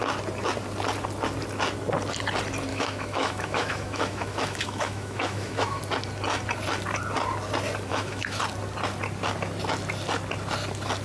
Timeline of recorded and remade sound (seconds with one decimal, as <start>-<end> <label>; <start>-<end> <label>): 0.0-2.7 recorded; 2.7-5.8 remade; 5.8-7.9 recorded; 7.9-8.4 remade; 8.4-11.0 recorded

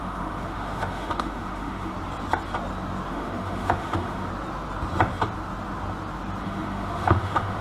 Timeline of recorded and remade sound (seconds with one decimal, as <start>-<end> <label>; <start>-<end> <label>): 0.0-1.9 remade; 1.9-3.1 recorded; 3.1-4.3 remade; 4.3-6.4 recorded; 6.4-7.6 remade

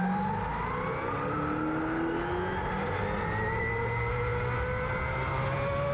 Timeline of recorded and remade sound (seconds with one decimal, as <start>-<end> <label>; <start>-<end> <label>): 0.0-5.9 recorded

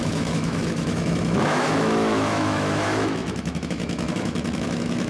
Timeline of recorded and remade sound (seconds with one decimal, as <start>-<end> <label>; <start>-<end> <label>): 0.0-5.1 remade

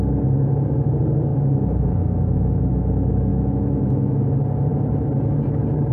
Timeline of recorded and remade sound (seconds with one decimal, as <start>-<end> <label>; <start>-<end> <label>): 0.0-1.3 recorded; 1.3-2.7 remade; 2.7-3.3 recorded; 3.3-4.2 remade; 4.2-5.9 recorded